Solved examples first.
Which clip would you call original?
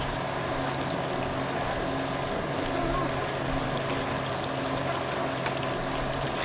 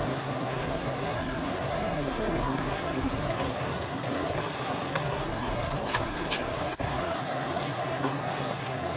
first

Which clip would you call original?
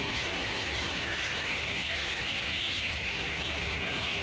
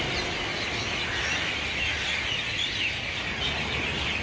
second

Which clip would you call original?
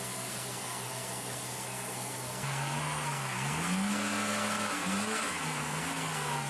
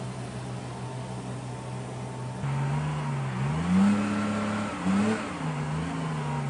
second